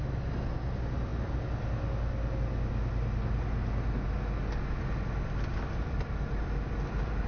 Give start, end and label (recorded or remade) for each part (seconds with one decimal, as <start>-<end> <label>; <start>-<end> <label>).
0.0-5.5 recorded; 5.5-6.0 remade; 6.0-7.3 recorded